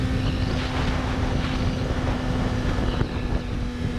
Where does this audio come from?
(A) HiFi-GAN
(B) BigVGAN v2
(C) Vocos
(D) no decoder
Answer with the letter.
D